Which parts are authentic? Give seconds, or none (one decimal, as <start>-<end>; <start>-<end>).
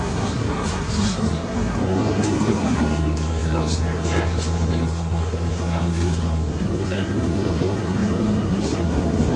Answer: none